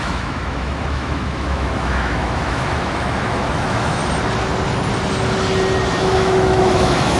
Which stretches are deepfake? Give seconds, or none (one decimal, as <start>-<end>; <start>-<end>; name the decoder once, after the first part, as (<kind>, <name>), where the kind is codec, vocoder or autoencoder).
0.0-4.0 (autoencoder, DAC-VAE); 6.0-7.2